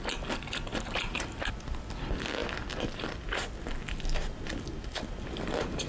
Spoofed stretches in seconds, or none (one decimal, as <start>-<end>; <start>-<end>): 0.7-1.5